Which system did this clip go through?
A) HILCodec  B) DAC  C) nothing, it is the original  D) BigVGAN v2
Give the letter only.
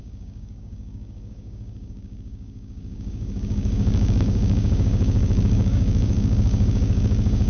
B